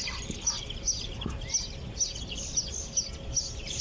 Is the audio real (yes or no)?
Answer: yes